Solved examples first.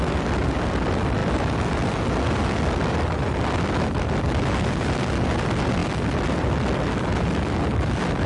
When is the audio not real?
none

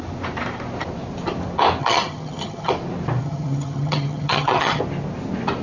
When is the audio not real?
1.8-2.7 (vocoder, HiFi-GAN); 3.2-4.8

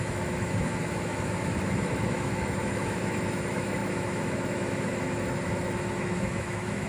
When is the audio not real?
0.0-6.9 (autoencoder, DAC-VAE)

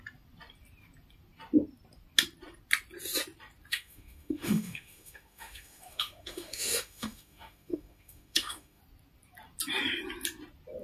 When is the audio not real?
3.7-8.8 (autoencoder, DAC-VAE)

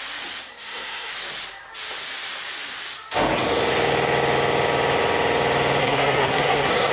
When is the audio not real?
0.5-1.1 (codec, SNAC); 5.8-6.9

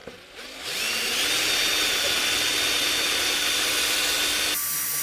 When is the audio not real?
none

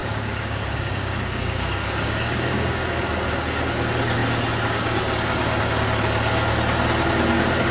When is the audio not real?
0.0-3.1 (codec, DAC)

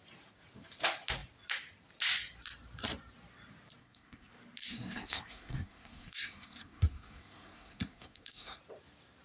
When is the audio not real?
3.8-4.3 (codec, SNAC); 4.7-8.6